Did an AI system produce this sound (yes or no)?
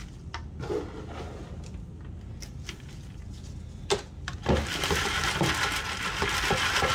no